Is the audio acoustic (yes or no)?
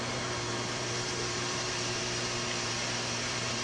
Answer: no